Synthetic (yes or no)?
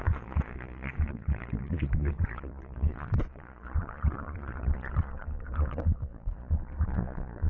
yes